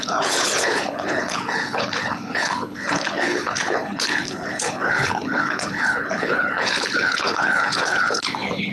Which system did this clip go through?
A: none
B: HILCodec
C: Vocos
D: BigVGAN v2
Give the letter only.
B